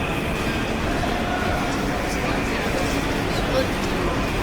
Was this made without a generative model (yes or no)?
yes